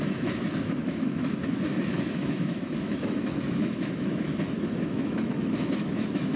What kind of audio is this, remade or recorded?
remade